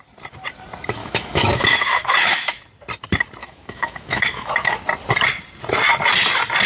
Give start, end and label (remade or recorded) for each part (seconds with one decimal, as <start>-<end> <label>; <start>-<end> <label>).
0.0-1.0 recorded; 1.0-2.6 remade; 2.6-3.4 recorded; 3.4-4.8 remade; 4.8-6.7 recorded